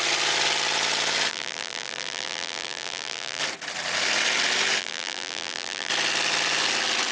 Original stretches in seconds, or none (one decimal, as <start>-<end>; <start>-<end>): 0.0-1.3; 3.4-4.8; 5.9-7.1